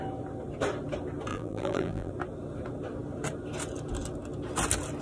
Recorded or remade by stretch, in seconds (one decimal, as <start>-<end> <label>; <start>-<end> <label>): 0.0-1.3 recorded; 1.3-2.1 remade; 2.1-5.0 recorded